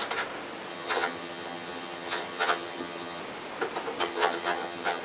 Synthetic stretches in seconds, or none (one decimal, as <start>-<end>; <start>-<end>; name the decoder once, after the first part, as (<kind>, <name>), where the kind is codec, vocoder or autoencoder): 0.7-3.2 (vocoder, HiFi-GAN); 4.0-5.0